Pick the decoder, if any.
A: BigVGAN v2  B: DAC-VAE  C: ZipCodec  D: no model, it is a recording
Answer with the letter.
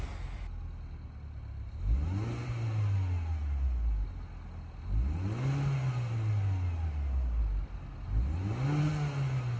D